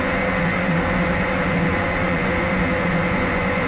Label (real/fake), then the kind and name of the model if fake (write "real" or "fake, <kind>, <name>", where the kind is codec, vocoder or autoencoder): fake, vocoder, Vocos